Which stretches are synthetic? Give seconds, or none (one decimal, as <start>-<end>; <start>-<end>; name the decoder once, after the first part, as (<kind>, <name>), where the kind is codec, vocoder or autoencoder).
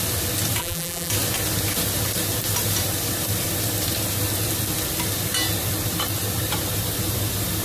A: 0.6-1.1 (vocoder, BigVGAN v2)